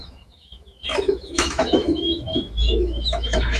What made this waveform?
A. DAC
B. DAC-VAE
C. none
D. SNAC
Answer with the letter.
B